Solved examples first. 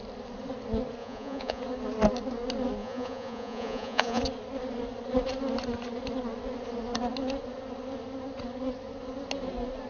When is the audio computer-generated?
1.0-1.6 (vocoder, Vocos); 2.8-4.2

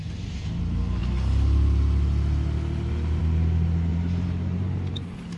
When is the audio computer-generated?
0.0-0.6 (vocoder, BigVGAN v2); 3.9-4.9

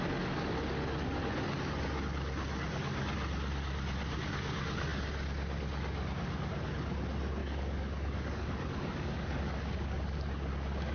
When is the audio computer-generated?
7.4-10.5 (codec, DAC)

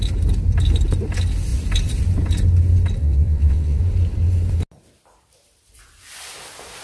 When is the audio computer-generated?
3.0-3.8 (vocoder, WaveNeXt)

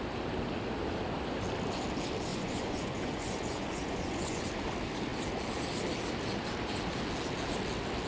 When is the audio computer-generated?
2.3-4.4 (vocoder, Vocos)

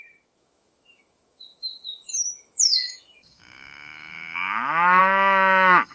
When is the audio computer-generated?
0.0-5.9 (autoencoder, DAC-VAE)

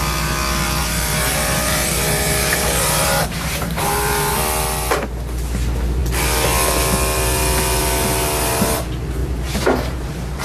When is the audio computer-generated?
0.8-4.3 (vocoder, BigVGAN v2); 9.2-10.4

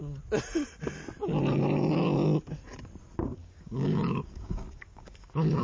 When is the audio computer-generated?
3.4-5.6 (codec, DAC)